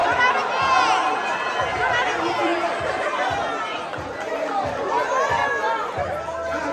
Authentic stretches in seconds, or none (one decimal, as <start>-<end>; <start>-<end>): 0.0-6.7